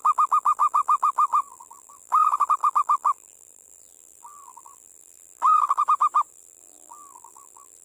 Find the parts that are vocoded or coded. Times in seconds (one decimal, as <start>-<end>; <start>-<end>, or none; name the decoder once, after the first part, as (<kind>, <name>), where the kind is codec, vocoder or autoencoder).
0.0-5.8 (vocoder, BigVGAN v2); 6.3-7.8